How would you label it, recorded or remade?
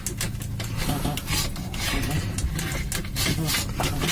recorded